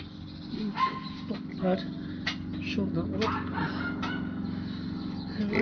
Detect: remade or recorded recorded